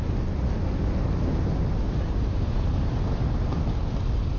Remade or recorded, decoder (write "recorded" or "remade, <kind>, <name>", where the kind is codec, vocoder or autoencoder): recorded